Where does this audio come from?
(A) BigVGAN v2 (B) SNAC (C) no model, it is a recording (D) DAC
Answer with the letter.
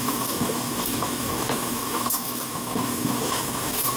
D